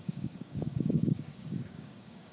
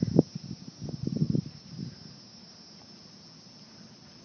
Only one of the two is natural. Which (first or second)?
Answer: second